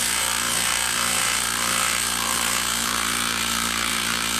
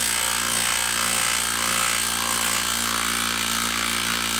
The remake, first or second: first